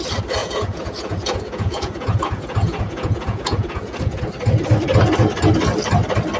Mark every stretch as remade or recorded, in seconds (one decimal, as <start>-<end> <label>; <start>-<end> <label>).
0.0-0.4 recorded; 0.4-4.2 remade; 4.2-6.4 recorded